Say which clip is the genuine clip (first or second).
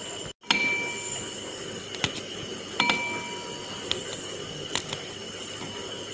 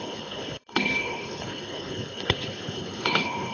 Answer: first